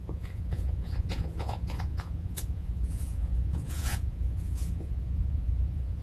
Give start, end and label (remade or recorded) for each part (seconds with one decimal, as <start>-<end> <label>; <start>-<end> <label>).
0.0-6.0 remade